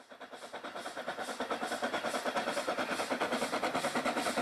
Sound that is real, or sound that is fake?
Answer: real